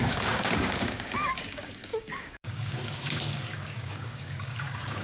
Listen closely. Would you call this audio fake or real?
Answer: fake